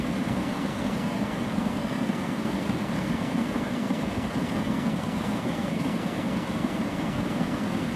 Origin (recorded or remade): remade